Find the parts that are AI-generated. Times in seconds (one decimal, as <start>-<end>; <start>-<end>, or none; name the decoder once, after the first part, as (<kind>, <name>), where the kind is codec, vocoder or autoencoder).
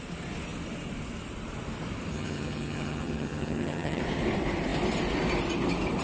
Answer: 2.1-4.0 (vocoder, HiFi-GAN)